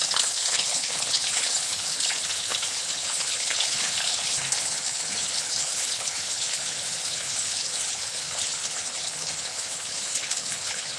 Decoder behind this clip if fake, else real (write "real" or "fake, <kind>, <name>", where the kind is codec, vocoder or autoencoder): fake, codec, HILCodec